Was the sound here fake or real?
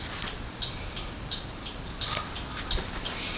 real